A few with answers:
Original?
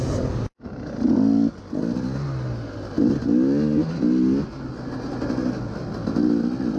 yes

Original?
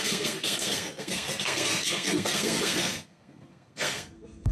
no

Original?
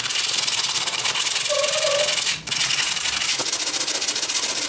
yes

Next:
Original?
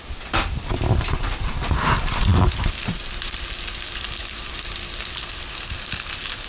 yes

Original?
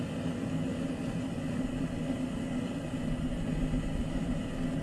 yes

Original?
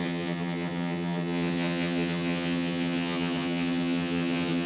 no